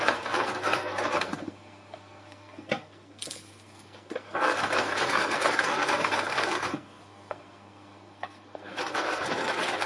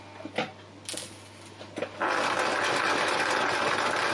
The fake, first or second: first